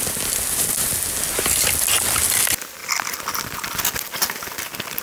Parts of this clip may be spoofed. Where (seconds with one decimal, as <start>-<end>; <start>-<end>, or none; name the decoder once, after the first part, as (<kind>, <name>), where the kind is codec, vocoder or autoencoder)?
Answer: none